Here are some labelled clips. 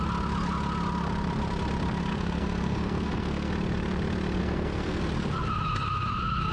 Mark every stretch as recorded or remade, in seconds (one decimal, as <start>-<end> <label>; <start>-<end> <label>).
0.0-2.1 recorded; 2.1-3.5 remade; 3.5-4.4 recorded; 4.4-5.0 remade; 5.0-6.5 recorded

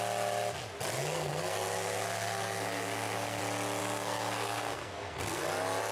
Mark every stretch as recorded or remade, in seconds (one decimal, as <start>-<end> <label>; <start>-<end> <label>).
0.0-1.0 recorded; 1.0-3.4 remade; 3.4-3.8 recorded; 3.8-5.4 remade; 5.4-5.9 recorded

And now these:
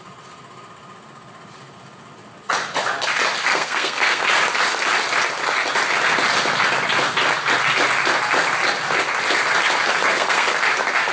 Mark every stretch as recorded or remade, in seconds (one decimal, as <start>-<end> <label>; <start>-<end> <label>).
0.0-3.5 recorded; 3.5-4.2 remade; 4.2-10.1 recorded; 10.1-10.6 remade; 10.6-11.1 recorded